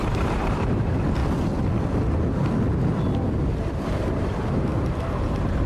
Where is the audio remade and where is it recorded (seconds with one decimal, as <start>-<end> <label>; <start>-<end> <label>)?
0.0-1.2 remade; 1.2-3.4 recorded; 3.4-4.7 remade; 4.7-5.2 recorded; 5.2-5.7 remade